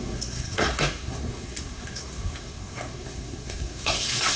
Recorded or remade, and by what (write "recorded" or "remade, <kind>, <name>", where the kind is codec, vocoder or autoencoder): remade, codec, SNAC